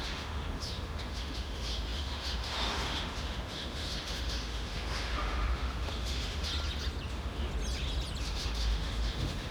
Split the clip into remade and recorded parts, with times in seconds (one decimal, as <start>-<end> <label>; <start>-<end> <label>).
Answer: 0.0-6.5 remade; 6.5-7.1 recorded; 7.1-7.5 remade; 7.5-8.2 recorded; 8.2-9.5 remade

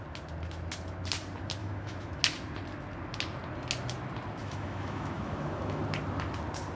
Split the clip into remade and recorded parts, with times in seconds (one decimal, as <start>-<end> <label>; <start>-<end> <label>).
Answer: 0.0-1.6 recorded; 1.6-2.2 remade; 2.2-4.4 recorded; 4.4-5.8 remade; 5.8-6.7 recorded

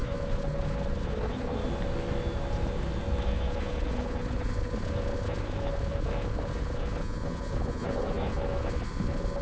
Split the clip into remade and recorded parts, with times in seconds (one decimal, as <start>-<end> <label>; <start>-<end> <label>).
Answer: 0.0-1.6 remade; 1.6-3.2 recorded; 3.2-9.4 remade

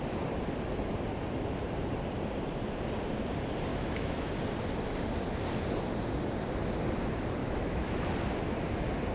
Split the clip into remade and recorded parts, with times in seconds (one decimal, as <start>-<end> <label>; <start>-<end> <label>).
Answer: 0.0-3.7 recorded; 3.7-4.3 remade; 4.3-7.4 recorded; 7.4-8.1 remade; 8.1-9.1 recorded

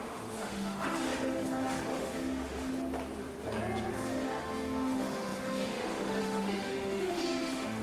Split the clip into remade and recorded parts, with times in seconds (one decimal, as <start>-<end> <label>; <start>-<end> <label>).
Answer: 0.0-2.7 remade; 2.7-3.9 recorded; 3.9-7.8 remade

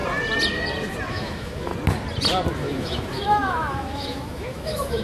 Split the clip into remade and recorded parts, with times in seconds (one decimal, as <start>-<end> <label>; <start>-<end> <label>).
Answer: 0.0-1.1 recorded; 1.1-1.7 remade; 1.7-2.5 recorded; 2.5-5.0 remade